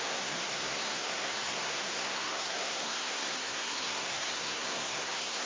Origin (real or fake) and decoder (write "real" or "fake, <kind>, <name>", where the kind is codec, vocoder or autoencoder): fake, codec, SNAC